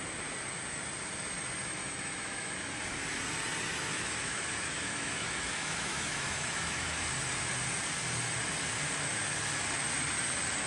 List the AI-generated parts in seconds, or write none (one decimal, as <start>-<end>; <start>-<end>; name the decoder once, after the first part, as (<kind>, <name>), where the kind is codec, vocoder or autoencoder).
1.8-2.8 (autoencoder, DAC-VAE); 3.7-7.1